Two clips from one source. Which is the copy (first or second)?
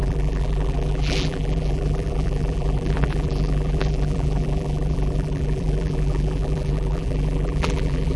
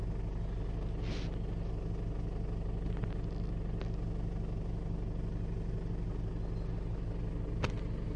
first